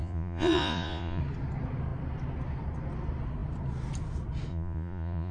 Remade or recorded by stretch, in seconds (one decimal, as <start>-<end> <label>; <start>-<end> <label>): 0.0-1.2 remade; 1.2-4.5 recorded; 4.5-5.3 remade

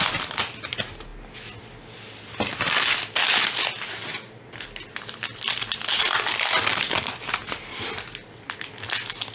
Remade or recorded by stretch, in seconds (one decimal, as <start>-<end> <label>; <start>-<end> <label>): 0.0-9.3 recorded

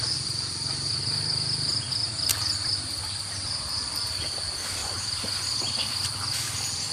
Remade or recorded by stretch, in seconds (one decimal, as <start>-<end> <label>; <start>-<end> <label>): 0.0-2.0 recorded; 2.0-3.0 remade; 3.0-6.9 recorded

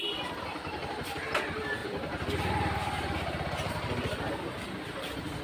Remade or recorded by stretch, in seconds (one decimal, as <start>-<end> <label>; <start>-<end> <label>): 0.0-0.5 recorded; 0.5-1.2 remade; 1.2-1.8 recorded; 1.8-3.7 remade; 3.7-5.4 recorded

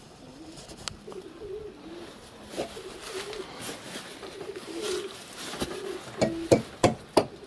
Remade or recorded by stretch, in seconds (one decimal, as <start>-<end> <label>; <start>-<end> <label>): 0.0-4.1 recorded; 4.1-5.5 remade; 5.5-7.5 recorded

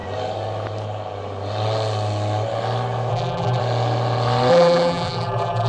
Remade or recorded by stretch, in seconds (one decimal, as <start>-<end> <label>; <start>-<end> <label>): 0.0-3.1 recorded; 3.1-3.6 remade; 3.6-4.5 recorded; 4.5-5.7 remade